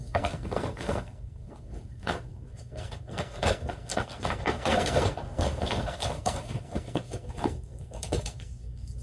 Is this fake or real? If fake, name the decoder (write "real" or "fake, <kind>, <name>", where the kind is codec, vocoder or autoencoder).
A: fake, codec, SNAC